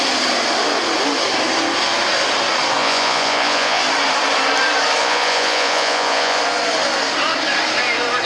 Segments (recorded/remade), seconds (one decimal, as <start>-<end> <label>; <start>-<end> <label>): 0.0-2.8 recorded; 2.8-3.8 remade; 3.8-5.0 recorded; 5.0-6.4 remade; 6.4-8.3 recorded